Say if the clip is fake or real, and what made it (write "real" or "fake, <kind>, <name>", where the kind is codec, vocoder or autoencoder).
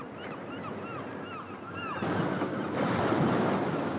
real